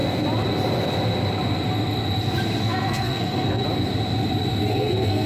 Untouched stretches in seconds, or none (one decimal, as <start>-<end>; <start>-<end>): 0.0-2.6; 3.6-4.7